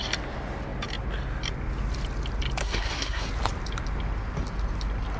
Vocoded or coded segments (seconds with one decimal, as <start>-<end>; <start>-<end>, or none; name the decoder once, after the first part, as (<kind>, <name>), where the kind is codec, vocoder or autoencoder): 2.6-3.3 (codec, SNAC)